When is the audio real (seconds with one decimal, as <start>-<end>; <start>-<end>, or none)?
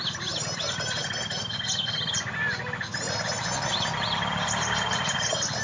0.0-5.6